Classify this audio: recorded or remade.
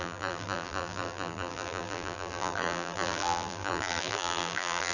remade